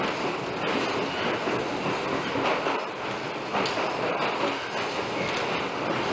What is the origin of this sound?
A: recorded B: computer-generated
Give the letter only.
A